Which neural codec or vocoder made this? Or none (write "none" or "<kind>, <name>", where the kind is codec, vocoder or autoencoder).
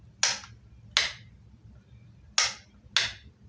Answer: none